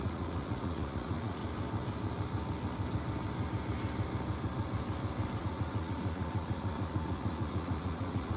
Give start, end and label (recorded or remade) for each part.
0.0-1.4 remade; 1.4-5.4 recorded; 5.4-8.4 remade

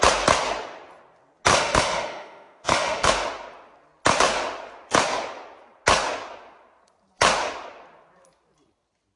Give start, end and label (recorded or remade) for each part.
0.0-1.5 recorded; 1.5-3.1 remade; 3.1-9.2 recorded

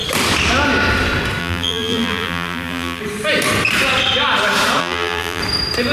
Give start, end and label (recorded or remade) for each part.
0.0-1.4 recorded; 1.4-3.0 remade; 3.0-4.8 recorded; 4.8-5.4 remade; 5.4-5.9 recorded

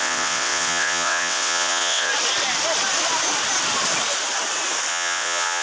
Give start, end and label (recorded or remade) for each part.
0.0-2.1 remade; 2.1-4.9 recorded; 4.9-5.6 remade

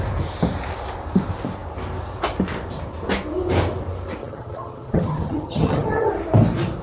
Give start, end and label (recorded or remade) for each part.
0.0-4.2 recorded; 4.2-6.1 remade; 6.1-6.8 recorded

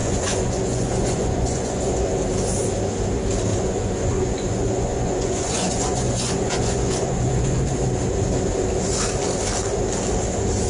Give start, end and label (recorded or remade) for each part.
0.0-2.1 remade; 2.1-3.5 recorded; 3.5-7.6 remade; 7.6-10.7 recorded